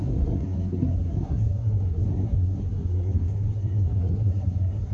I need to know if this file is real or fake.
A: fake